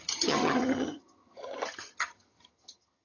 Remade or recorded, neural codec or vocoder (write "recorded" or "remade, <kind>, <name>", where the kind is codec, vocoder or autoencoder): remade, vocoder, HiFi-GAN